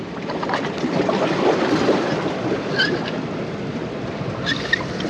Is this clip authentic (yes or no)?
yes